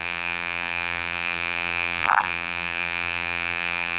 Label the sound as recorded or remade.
remade